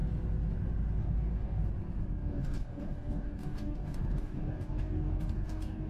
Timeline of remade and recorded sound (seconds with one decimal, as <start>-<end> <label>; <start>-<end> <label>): 0.0-1.0 recorded; 1.0-1.6 remade; 1.6-2.2 recorded; 2.2-5.9 remade